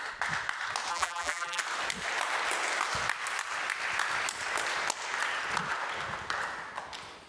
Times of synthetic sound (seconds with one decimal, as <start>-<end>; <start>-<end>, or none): 0.9-1.6